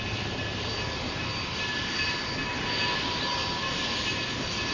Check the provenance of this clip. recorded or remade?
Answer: recorded